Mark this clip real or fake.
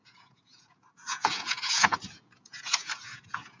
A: fake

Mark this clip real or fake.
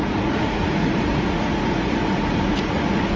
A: fake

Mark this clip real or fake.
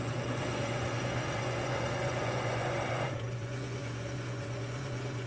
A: fake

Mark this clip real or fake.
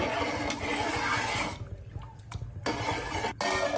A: real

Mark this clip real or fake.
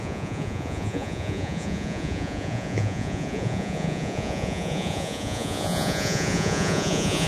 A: fake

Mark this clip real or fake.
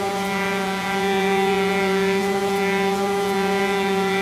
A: fake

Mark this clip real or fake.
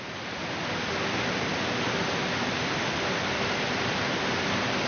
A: real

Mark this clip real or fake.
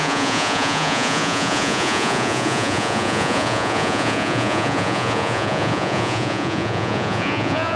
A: fake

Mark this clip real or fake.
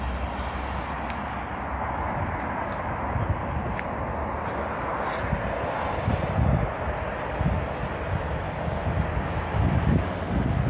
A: real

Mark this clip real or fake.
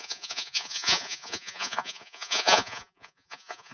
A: fake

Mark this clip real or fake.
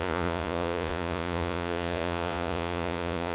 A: fake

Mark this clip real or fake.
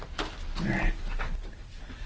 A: real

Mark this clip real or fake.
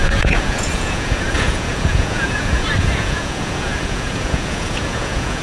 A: fake